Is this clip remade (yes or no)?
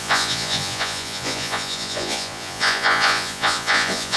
yes